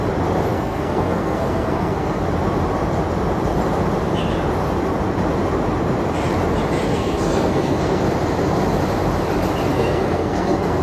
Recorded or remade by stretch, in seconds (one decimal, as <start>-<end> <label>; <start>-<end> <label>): 0.0-0.5 recorded; 0.5-2.2 remade; 2.2-6.9 recorded; 6.9-8.0 remade; 8.0-9.7 recorded; 9.7-10.8 remade